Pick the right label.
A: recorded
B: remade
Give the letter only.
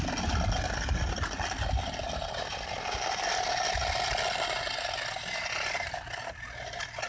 A